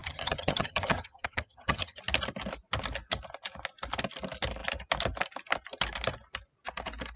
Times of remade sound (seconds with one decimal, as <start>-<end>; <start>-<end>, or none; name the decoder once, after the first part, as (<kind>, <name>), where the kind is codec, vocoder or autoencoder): 0.0-2.0 (vocoder, HiFi-GAN)